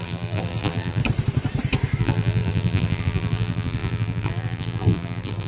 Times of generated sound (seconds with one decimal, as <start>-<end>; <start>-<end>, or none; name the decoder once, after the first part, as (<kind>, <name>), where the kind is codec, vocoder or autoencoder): 0.0-1.0 (vocoder, BigVGAN v2); 2.0-5.5